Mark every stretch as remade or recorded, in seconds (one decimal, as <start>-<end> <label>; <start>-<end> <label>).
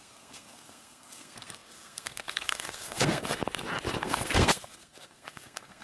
0.0-3.4 remade; 3.4-4.0 recorded; 4.0-5.8 remade